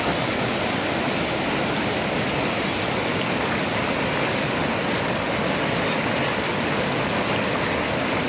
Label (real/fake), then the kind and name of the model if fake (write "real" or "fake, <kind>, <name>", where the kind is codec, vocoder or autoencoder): real